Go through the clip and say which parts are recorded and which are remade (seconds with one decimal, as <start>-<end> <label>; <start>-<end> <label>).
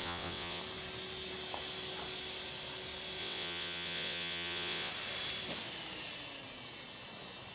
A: 0.0-0.6 remade; 0.6-3.2 recorded; 3.2-4.9 remade; 4.9-7.5 recorded